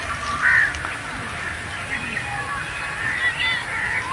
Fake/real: real